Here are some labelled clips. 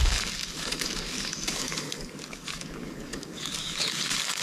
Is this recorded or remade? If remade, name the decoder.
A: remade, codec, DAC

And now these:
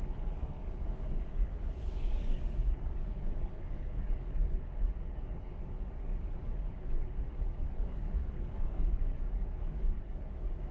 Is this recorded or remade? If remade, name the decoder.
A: remade, codec, DAC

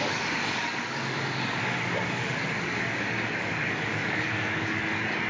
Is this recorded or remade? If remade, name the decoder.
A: remade, codec, DAC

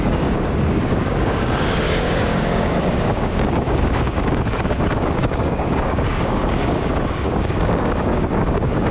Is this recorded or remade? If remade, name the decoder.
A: remade, codec, DAC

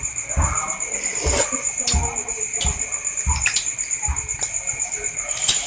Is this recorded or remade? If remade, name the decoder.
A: recorded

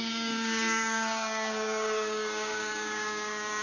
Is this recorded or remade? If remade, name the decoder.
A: remade, codec, DAC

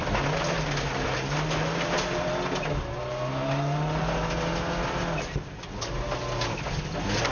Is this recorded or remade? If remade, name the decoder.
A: recorded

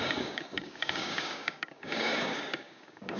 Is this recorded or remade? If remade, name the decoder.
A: remade, codec, DAC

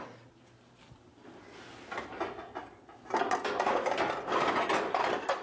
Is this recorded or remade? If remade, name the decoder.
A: recorded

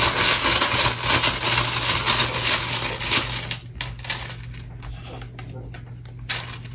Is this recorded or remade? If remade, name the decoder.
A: recorded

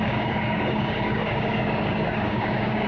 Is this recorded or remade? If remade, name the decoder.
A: remade, codec, DAC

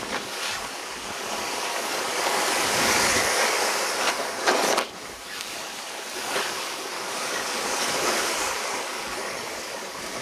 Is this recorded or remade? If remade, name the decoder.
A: remade, codec, DAC